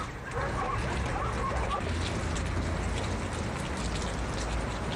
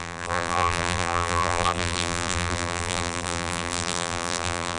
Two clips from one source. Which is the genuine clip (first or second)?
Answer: first